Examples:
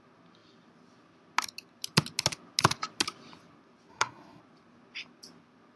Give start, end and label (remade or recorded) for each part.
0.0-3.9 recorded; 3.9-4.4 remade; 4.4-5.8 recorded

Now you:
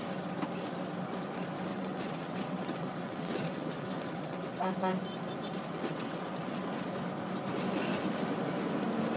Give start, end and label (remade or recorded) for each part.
0.0-1.7 recorded; 1.7-4.7 remade; 4.7-5.7 recorded; 5.7-6.6 remade; 6.6-9.2 recorded